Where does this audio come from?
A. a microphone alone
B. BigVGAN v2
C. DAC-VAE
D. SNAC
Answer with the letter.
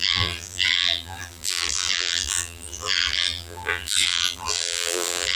B